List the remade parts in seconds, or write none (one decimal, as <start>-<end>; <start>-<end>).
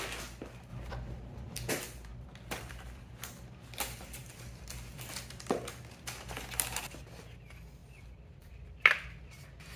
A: 0.7-1.7; 2.1-5.7; 7.8-9.2